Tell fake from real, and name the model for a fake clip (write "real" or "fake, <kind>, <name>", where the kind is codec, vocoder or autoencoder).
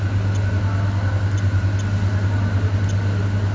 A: real